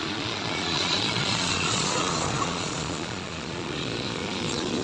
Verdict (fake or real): fake